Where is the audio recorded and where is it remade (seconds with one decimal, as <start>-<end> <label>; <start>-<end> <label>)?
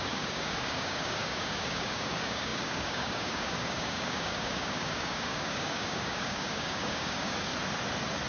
0.0-7.5 remade; 7.5-8.3 recorded